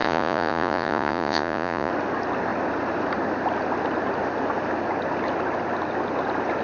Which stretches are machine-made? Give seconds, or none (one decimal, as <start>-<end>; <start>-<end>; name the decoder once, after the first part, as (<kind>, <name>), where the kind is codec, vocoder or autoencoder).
0.0-1.9 (vocoder, Vocos)